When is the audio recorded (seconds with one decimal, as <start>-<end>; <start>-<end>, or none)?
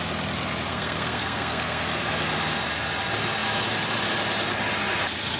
0.0-0.7; 1.8-5.4